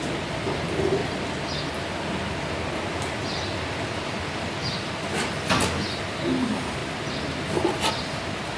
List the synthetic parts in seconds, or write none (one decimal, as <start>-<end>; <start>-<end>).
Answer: none